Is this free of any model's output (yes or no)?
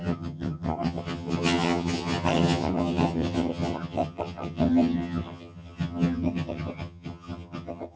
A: no